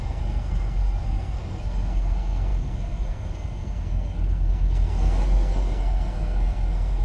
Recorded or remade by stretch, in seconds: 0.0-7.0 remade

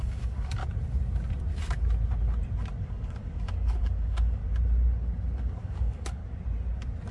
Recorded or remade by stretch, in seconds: 0.0-0.6 remade; 0.6-2.8 recorded; 2.8-4.4 remade; 4.4-5.4 recorded; 5.4-6.2 remade; 6.2-7.1 recorded

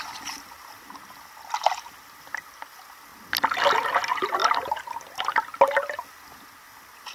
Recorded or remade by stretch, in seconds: 0.0-7.1 recorded